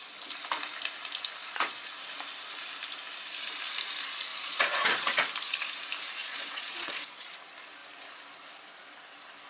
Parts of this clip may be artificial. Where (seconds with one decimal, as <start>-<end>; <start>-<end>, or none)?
1.4-1.9; 4.3-5.2; 6.2-7.3